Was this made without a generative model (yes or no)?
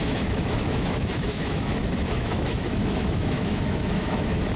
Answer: no